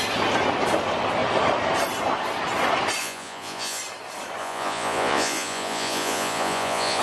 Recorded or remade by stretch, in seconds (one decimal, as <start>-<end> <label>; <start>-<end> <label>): 0.0-3.0 recorded; 3.0-3.8 remade; 3.8-4.4 recorded; 4.4-7.0 remade